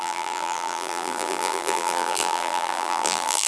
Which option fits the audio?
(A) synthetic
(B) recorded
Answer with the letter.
A